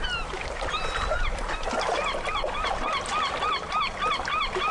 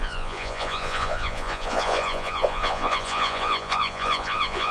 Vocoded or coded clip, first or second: second